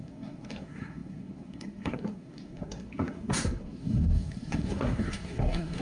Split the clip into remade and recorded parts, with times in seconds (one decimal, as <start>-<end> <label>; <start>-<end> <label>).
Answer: 0.0-5.8 remade